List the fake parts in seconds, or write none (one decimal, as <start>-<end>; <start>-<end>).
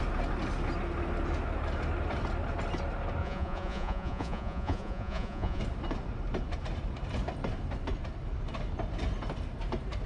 3.2-5.6